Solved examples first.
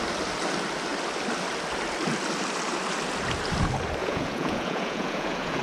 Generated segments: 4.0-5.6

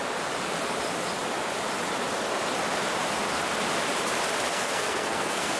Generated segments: 4.5-5.6

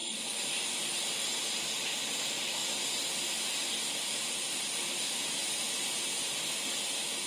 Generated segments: 2.0-2.6

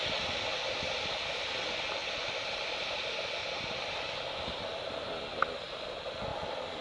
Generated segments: 0.5-1.4; 2.0-3.3

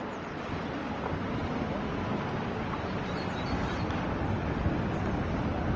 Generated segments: none